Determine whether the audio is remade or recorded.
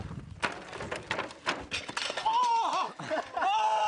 recorded